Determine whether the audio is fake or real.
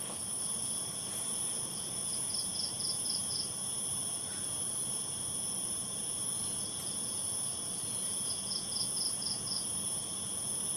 fake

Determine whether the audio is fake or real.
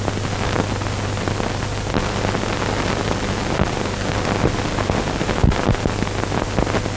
real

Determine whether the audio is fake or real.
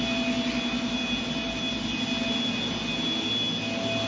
real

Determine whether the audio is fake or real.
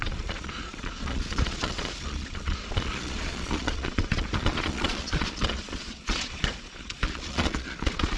fake